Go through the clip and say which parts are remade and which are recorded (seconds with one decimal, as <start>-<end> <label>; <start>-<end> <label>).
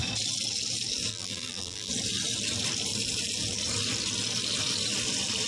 0.0-1.1 recorded; 1.1-1.9 remade; 1.9-5.5 recorded